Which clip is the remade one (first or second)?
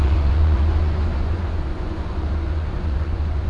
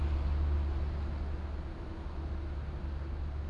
first